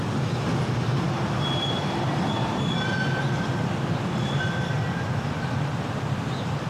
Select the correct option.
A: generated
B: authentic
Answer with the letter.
B